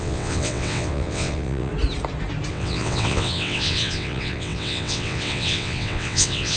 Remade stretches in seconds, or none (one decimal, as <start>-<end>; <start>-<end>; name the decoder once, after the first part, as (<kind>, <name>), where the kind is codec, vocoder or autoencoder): 0.0-1.7 (vocoder, WaveNeXt); 2.5-6.6